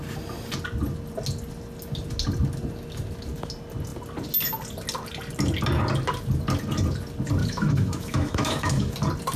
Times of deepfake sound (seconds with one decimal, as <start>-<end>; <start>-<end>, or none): 7.4-8.9